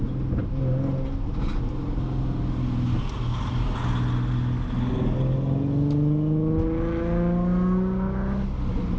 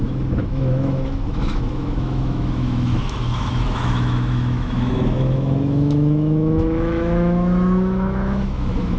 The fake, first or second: second